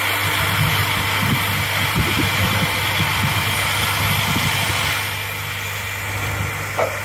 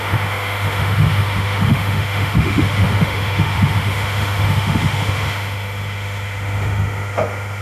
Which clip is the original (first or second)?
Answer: first